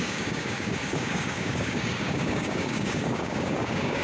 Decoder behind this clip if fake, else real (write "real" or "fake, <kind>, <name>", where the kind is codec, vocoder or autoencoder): fake, codec, DAC